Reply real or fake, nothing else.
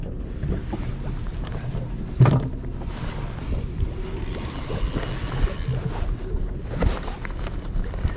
real